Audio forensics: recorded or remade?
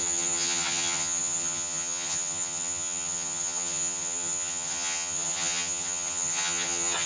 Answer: remade